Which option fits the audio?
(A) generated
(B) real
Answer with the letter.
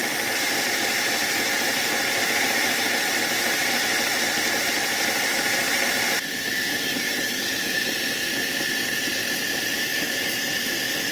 B